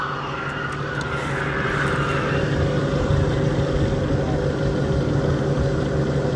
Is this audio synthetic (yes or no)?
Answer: no